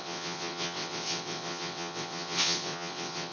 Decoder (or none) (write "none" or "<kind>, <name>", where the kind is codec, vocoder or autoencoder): vocoder, WaveNeXt